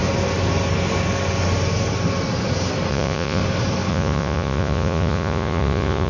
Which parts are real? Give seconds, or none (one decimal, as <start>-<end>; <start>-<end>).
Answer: 0.0-2.9; 3.4-3.9